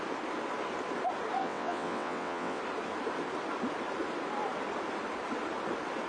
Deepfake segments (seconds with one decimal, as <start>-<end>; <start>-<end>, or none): 1.4-2.6